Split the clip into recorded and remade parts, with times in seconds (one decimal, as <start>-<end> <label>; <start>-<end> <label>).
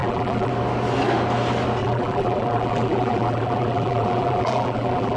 0.0-0.5 remade; 0.5-1.8 recorded; 1.8-5.2 remade